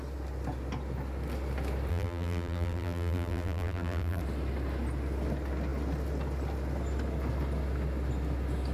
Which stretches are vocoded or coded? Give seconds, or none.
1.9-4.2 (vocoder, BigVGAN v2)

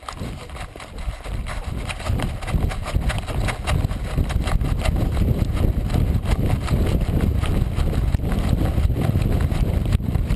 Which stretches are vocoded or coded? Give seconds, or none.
none

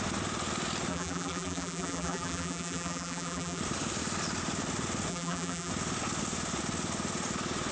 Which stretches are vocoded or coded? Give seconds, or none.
0.9-3.6 (vocoder, BigVGAN v2); 5.1-5.7